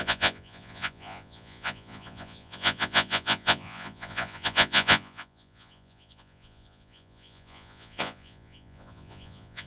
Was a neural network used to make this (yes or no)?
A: yes